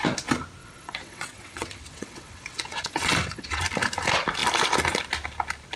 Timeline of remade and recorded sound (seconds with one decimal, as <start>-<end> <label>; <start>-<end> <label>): 0.0-0.6 recorded; 0.6-3.6 remade; 3.6-5.8 recorded